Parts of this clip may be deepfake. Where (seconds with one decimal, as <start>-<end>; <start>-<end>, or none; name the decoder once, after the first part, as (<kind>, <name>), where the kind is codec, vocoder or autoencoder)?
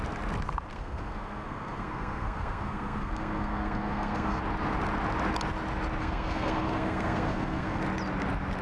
0.7-4.4 (codec, SNAC); 6.0-7.8